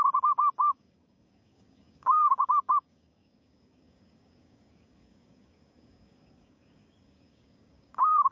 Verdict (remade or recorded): remade